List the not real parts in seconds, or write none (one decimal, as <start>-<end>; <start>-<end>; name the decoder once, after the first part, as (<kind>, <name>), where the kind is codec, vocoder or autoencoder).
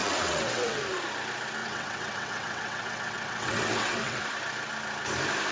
0.0-0.8 (vocoder, WaveNeXt); 1.6-4.2